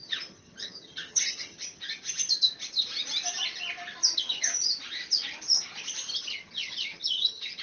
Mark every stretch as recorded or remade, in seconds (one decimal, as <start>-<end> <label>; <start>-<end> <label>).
0.0-1.8 remade; 1.8-4.0 recorded; 4.0-4.7 remade; 4.7-6.1 recorded; 6.1-7.6 remade